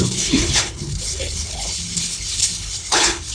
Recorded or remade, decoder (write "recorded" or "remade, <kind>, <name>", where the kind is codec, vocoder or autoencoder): remade, codec, HILCodec